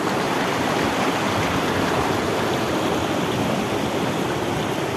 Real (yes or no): yes